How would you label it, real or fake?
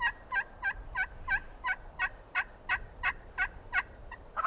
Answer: real